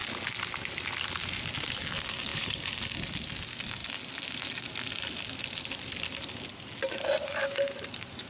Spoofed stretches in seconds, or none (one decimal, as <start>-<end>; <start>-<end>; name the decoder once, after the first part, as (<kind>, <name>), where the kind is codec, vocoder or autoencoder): 2.3-2.8 (vocoder, BigVGAN v2)